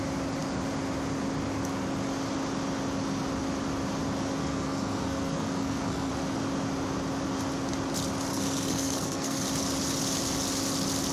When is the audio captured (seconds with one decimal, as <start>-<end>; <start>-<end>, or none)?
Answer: 0.0-4.4; 6.1-8.3; 9.4-11.1

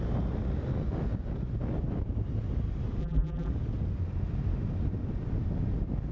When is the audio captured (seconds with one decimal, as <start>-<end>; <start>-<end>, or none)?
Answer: 0.0-3.0; 3.5-6.1

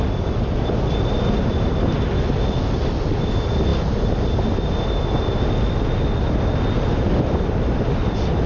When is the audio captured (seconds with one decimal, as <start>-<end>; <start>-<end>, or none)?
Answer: 0.0-8.5

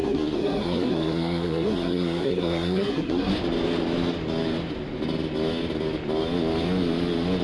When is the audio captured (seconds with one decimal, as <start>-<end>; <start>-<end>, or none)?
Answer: 3.3-7.4

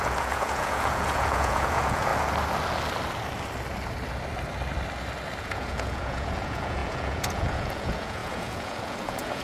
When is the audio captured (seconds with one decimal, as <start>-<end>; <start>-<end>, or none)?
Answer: 2.1-5.4

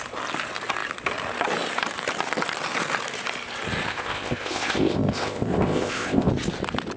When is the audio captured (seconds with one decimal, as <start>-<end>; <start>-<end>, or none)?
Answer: 0.0-3.9; 6.3-7.0

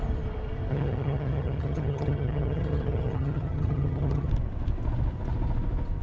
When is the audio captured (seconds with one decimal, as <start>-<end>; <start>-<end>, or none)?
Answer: 0.0-0.7; 4.3-6.0